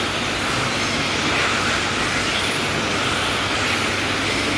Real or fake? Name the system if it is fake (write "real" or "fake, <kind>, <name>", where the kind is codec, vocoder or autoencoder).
real